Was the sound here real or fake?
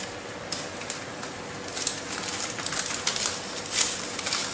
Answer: real